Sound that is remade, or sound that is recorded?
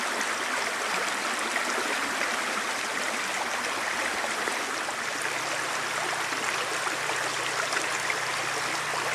recorded